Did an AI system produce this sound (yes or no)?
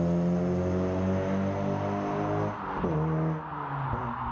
no